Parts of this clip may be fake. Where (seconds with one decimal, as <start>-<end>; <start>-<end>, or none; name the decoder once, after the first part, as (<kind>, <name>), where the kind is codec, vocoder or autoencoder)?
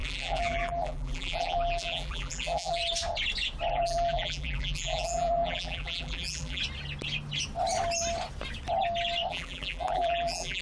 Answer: 0.0-2.8 (vocoder, BigVGAN v2); 3.7-6.6; 9.3-10.6